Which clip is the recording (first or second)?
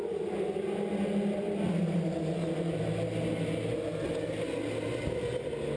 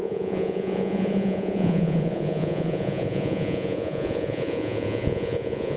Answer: first